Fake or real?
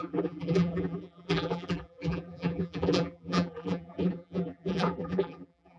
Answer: fake